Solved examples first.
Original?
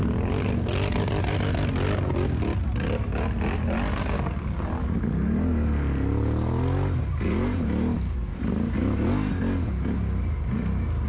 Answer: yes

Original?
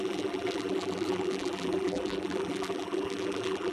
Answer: no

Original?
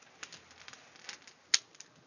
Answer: yes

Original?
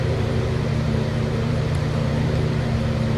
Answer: no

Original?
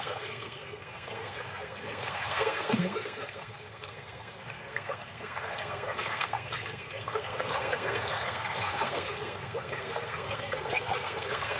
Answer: no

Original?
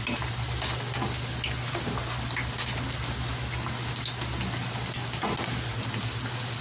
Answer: yes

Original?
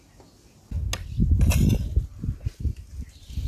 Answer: yes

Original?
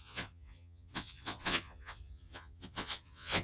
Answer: no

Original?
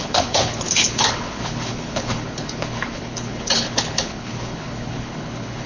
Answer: no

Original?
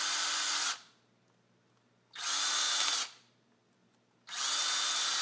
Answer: yes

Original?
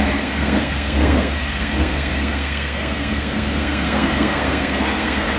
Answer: no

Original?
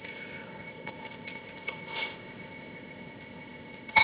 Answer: no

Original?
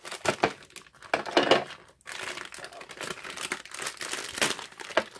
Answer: yes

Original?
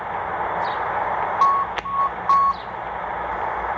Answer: yes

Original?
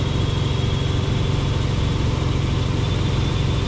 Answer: yes